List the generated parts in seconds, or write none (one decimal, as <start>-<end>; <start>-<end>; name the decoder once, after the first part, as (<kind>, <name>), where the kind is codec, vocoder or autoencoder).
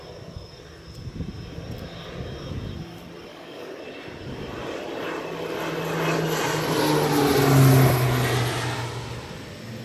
3.3-3.8 (codec, DAC)